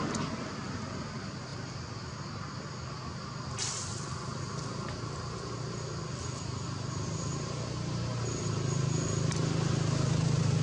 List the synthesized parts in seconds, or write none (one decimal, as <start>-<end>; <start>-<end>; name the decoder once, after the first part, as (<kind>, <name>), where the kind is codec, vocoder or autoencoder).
none